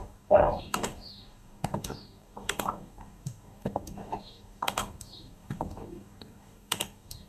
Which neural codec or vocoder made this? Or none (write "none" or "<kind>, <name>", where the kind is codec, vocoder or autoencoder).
codec, DAC